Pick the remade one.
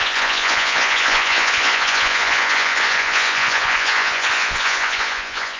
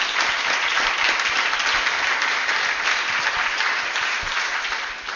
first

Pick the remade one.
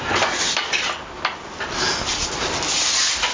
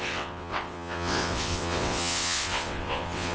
second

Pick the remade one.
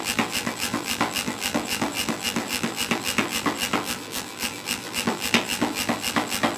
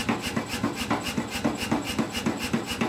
first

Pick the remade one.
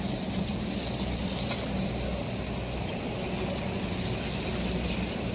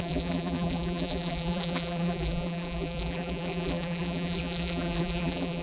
second